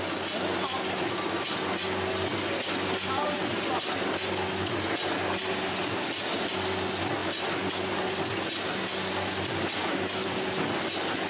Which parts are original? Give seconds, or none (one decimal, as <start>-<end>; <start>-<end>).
0.0-11.3